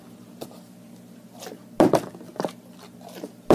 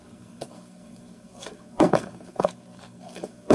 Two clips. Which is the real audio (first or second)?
first